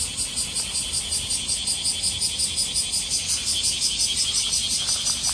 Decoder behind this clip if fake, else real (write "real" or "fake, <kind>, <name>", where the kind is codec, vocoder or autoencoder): real